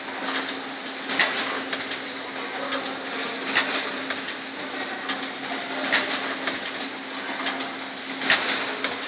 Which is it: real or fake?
real